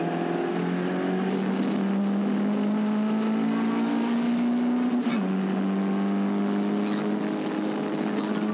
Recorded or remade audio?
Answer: recorded